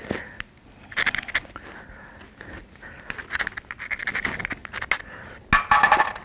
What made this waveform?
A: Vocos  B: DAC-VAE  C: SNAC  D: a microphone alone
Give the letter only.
D